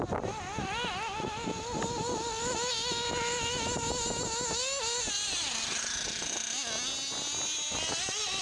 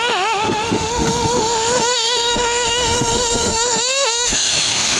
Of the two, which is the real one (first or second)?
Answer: first